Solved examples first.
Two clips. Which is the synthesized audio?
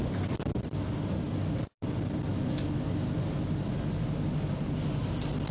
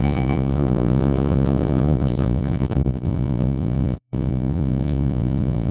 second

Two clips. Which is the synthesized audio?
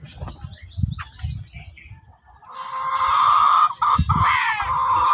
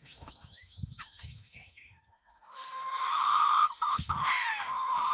second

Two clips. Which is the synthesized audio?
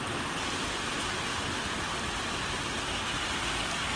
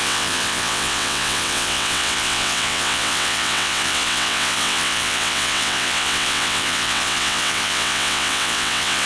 second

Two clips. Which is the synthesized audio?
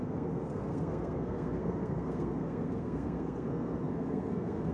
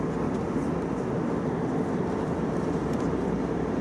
first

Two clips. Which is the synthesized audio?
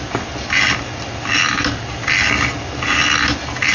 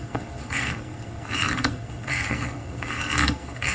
second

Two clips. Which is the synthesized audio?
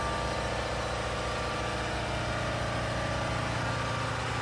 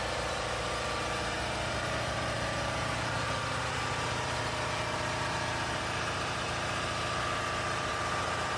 second